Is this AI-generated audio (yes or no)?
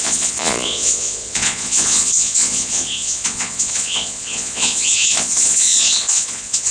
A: yes